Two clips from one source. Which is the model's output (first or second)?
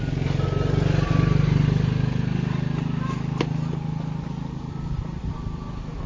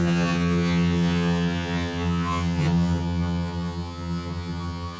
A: second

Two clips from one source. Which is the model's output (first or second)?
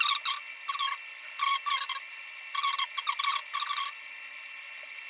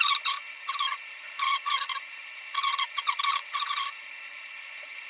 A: second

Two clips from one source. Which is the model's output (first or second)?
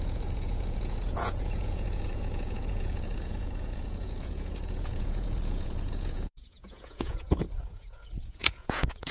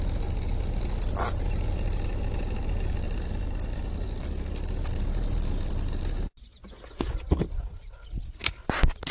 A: first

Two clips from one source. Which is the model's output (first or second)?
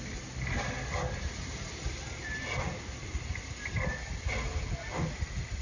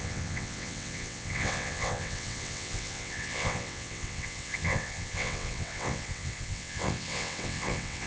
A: second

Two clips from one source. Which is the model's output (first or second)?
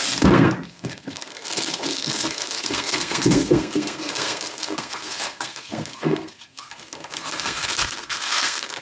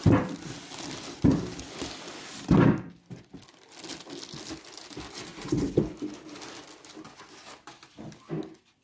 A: first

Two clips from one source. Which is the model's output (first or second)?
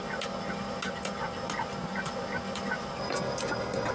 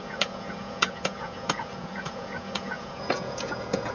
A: second